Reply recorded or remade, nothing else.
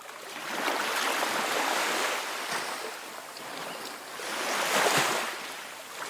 recorded